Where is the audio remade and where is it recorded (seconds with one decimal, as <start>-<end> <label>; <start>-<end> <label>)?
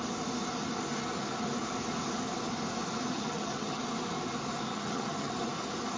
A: 0.0-3.1 recorded; 3.1-3.8 remade; 3.8-4.7 recorded; 4.7-5.3 remade; 5.3-6.0 recorded